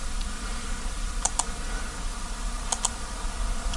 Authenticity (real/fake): real